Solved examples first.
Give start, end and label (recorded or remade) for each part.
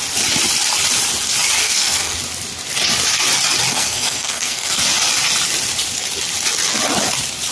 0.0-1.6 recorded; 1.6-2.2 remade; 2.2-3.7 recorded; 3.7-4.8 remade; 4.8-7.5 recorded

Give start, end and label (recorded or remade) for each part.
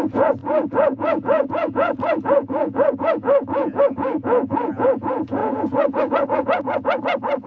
0.0-7.5 remade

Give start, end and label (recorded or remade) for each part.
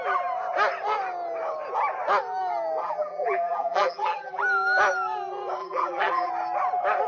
0.0-2.8 recorded; 2.8-4.4 remade; 4.4-5.6 recorded; 5.6-6.3 remade; 6.3-7.1 recorded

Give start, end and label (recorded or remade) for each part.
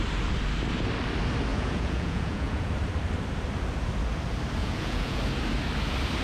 0.0-1.5 recorded; 1.5-2.7 remade; 2.7-4.6 recorded; 4.6-5.2 remade; 5.2-6.2 recorded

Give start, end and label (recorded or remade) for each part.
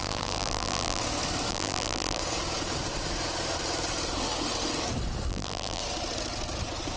0.0-1.0 remade; 1.0-1.5 recorded; 1.5-2.2 remade; 2.2-5.3 recorded; 5.3-5.8 remade; 5.8-7.0 recorded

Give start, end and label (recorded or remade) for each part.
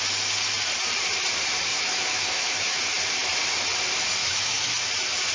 0.0-1.7 recorded; 1.7-2.8 remade; 2.8-4.2 recorded; 4.2-4.7 remade; 4.7-5.3 recorded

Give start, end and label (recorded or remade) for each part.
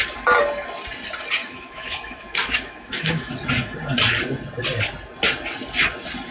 0.0-1.4 recorded; 1.4-3.3 remade; 3.3-6.3 recorded